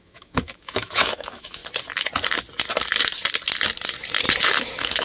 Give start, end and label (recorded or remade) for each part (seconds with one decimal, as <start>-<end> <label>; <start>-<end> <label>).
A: 0.0-1.6 remade; 1.6-4.6 recorded; 4.6-5.0 remade